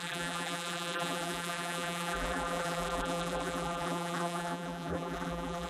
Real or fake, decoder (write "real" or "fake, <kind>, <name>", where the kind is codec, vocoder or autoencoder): fake, vocoder, BigVGAN v2